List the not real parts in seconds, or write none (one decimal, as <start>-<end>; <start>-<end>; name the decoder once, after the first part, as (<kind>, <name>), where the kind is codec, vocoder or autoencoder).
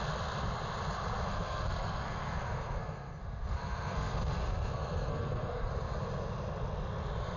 1.3-5.7 (codec, SNAC)